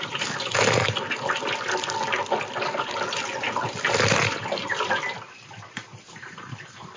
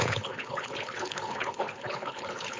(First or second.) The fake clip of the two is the second